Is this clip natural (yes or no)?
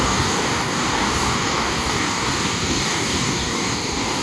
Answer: no